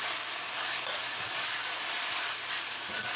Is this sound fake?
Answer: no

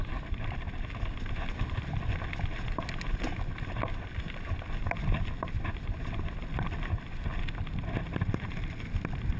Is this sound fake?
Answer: no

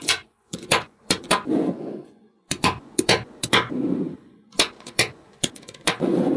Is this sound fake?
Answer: yes